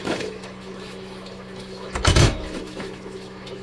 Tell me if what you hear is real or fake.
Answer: fake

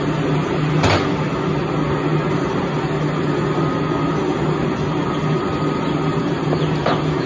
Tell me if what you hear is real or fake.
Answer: real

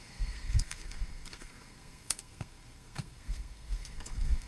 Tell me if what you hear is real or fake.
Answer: fake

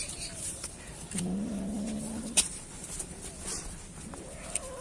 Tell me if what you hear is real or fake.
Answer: fake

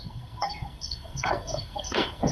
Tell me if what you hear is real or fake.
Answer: fake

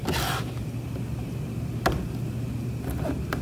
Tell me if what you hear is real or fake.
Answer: real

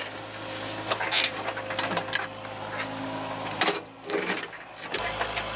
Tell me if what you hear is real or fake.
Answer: real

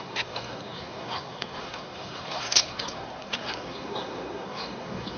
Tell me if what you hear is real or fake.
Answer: fake